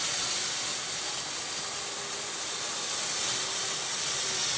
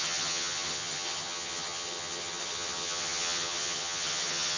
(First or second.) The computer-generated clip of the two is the second